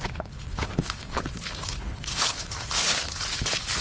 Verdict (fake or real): fake